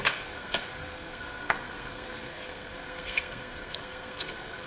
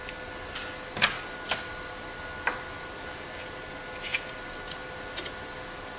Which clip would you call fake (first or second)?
first